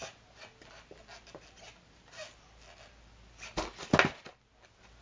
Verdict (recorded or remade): recorded